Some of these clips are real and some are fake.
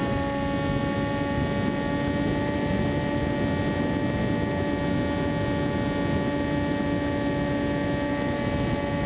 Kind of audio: real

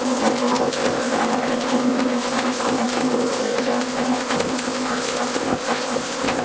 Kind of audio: fake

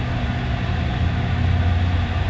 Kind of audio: real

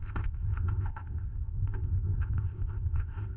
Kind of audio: fake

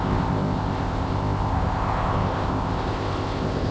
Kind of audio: fake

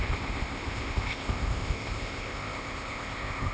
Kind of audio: fake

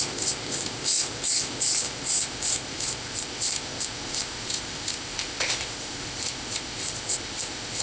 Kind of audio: fake